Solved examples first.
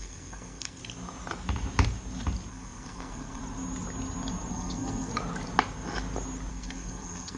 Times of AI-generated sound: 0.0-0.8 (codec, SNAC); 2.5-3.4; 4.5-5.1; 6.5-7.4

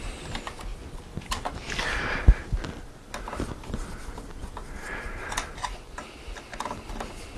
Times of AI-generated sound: none